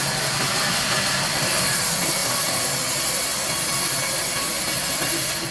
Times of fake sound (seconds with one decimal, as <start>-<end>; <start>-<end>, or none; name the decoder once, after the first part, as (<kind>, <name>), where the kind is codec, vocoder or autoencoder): none